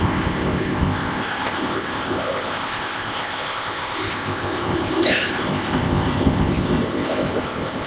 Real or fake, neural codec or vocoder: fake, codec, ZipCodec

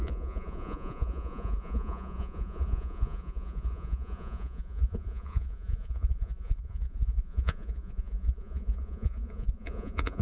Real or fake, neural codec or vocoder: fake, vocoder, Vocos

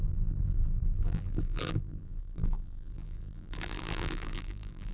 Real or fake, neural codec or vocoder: fake, vocoder, BigVGAN v2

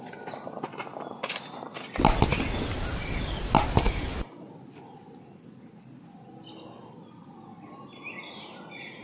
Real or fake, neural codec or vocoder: real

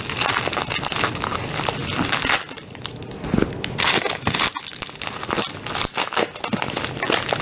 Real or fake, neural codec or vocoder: real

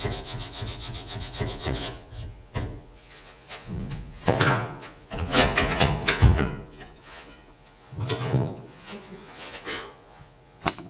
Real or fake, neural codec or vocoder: fake, vocoder, Vocos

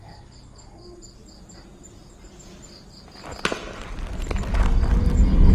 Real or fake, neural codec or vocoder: real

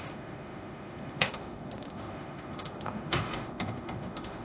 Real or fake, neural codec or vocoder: fake, autoencoder, DAC-VAE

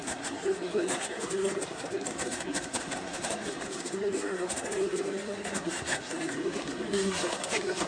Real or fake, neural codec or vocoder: fake, codec, SNAC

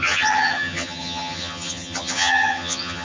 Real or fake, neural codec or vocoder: fake, vocoder, HiFi-GAN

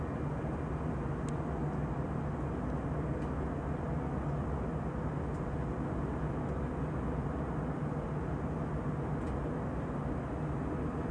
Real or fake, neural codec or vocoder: real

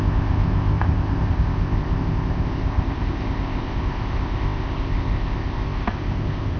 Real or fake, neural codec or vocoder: fake, codec, ZipCodec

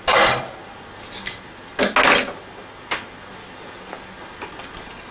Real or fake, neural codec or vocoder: real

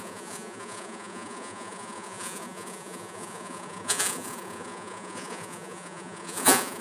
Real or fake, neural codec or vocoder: fake, vocoder, Vocos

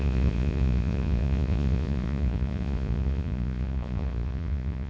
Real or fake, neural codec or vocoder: fake, vocoder, Vocos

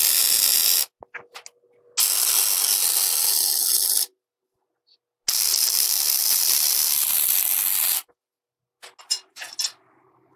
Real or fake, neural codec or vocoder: real